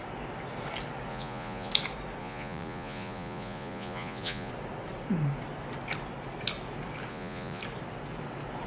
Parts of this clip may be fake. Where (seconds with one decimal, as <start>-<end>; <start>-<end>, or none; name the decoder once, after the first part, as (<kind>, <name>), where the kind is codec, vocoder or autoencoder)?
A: 1.1-1.7 (vocoder, Vocos); 2.2-4.5; 7.1-7.6